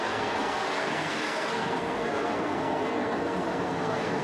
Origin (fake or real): fake